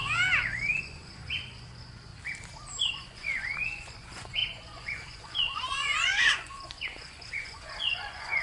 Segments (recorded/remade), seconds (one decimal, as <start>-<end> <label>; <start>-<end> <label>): 0.0-0.8 recorded; 0.8-2.1 remade; 2.1-2.9 recorded; 2.9-8.4 remade